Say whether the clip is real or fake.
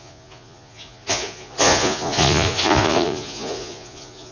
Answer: fake